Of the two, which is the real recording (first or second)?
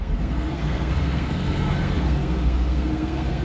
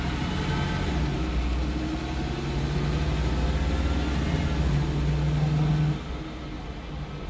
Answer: second